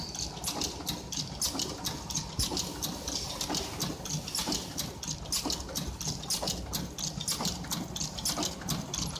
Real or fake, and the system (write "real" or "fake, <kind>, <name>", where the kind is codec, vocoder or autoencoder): real